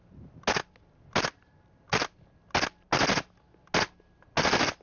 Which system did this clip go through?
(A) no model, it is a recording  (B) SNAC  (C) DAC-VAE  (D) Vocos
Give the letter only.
A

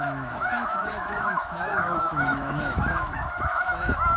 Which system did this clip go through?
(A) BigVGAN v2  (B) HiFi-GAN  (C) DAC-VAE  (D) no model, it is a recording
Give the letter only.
C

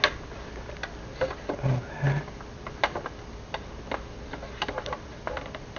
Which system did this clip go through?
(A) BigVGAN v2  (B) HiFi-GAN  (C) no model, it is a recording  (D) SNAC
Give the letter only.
C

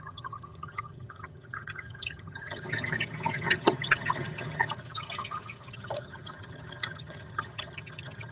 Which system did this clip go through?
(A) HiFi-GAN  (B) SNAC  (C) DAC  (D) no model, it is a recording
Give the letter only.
A